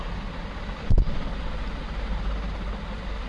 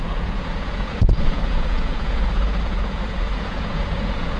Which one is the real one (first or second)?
first